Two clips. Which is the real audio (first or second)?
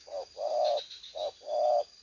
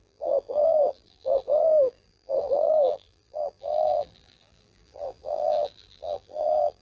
first